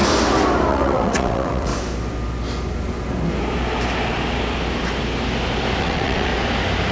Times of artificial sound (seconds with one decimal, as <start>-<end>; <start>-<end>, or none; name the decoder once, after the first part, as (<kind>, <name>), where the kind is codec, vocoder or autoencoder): 0.7-1.7 (vocoder, WaveNeXt); 5.8-6.3